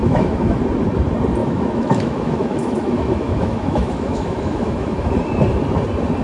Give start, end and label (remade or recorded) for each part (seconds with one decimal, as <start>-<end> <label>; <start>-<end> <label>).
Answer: 0.0-0.6 remade; 0.6-1.4 recorded; 1.4-5.1 remade; 5.1-6.2 recorded

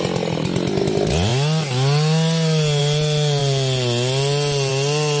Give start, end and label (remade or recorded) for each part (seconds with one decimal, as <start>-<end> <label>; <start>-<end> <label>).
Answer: 0.0-5.2 recorded

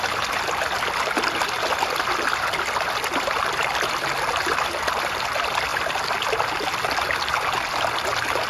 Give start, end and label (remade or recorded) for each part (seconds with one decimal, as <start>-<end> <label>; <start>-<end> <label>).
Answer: 0.0-8.5 recorded